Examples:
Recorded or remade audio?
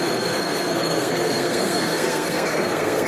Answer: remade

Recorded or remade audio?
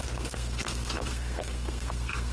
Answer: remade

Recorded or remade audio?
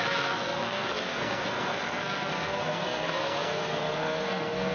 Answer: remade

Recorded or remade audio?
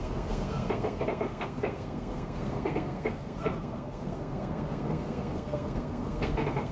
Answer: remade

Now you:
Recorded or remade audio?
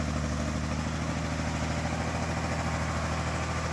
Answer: recorded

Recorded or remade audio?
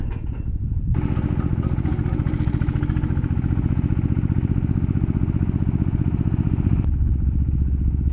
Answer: recorded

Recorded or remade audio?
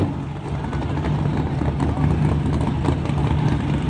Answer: recorded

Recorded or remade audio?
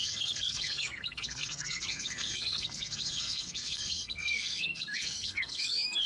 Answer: remade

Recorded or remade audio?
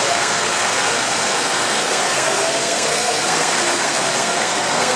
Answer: remade